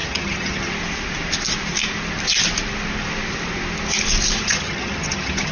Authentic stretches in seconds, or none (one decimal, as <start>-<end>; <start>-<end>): 0.7-4.4